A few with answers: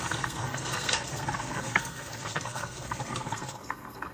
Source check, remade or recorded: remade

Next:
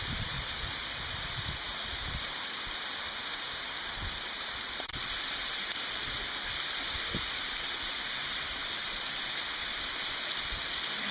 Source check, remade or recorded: recorded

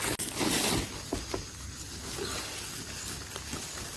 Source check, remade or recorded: recorded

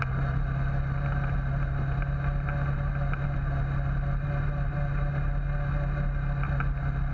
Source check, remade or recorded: recorded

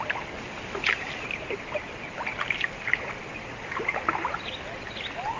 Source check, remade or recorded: recorded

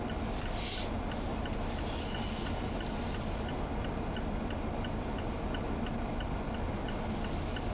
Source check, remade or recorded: recorded